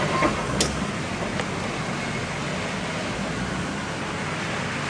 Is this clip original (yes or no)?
yes